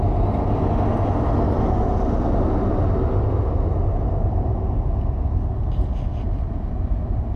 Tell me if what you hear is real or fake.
real